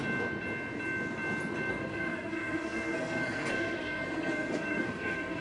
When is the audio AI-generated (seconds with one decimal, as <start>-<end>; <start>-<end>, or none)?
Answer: 1.7-5.4